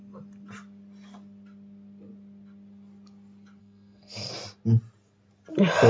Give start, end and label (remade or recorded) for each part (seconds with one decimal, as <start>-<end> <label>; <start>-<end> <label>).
0.0-3.6 recorded; 3.6-4.3 remade; 4.3-5.9 recorded